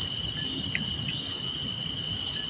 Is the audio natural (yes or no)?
yes